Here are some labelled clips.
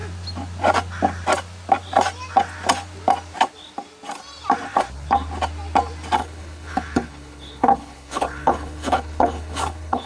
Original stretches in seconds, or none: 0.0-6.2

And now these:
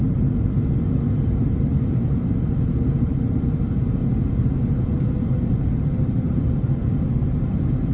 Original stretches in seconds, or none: 0.0-1.7; 2.3-7.9

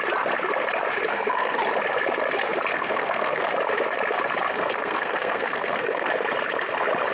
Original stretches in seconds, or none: 0.0-1.1; 1.6-2.7; 3.5-4.5; 6.1-7.1

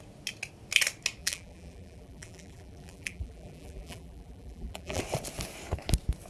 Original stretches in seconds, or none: 0.0-1.2; 5.0-6.3

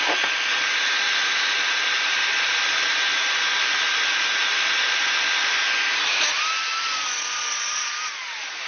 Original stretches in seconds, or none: 0.0-8.7

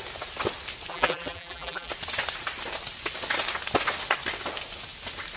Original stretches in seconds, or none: 0.0-0.9; 1.9-5.4

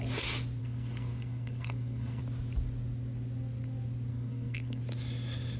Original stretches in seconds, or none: 0.0-0.6; 2.2-4.1; 4.8-5.6

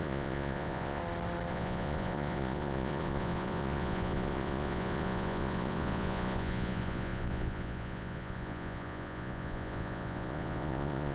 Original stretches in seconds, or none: 1.0-1.5